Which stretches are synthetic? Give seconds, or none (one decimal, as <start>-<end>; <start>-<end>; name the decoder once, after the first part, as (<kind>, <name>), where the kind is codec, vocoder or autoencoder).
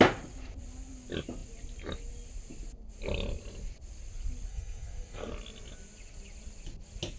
4.5-5.3 (codec, SNAC)